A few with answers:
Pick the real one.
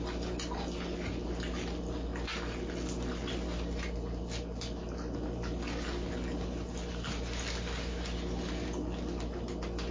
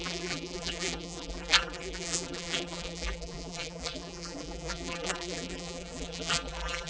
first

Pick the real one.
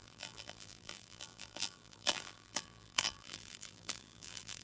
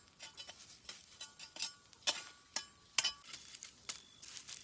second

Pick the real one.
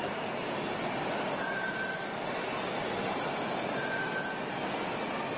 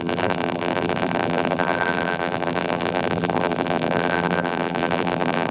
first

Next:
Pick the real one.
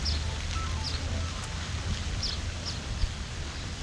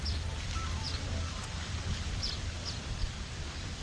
first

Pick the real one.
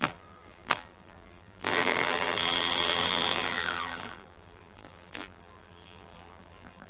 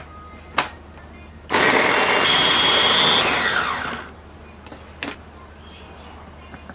second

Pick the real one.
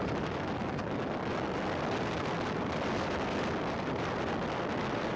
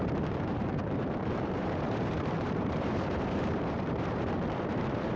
first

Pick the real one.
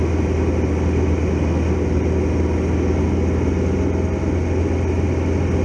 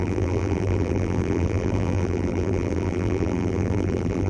first